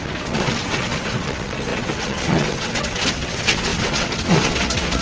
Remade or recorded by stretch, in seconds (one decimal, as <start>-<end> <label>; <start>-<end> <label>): 0.0-5.0 remade